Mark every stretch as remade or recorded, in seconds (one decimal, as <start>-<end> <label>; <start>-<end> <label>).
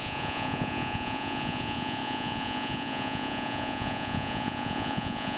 0.0-5.4 remade